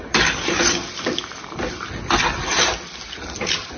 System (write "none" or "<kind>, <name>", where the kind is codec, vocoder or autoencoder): none